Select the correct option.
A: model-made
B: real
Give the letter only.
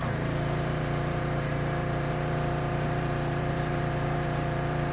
A